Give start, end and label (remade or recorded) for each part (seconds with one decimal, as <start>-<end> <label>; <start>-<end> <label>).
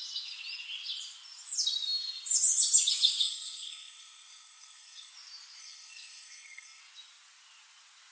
0.0-3.2 recorded; 3.2-5.1 remade; 5.1-5.6 recorded; 5.6-6.8 remade; 6.8-8.1 recorded